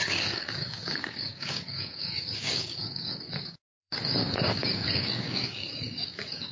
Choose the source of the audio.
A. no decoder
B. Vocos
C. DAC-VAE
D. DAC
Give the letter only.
D